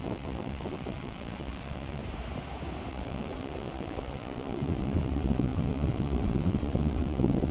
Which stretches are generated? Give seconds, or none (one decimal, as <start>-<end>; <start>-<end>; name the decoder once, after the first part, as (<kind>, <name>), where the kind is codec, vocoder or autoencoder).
0.0-2.0 (vocoder, WaveNeXt); 2.9-7.5